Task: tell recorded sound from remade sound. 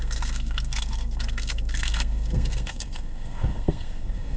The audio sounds remade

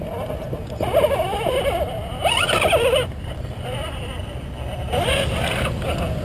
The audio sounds recorded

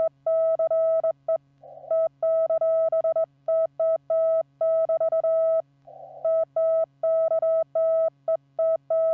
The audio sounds recorded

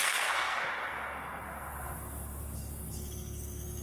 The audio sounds remade